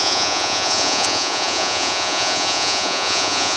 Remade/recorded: remade